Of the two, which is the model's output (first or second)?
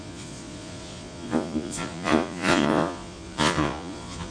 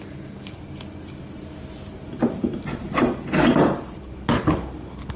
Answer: first